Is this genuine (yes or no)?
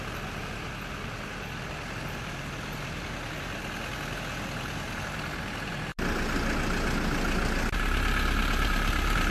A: yes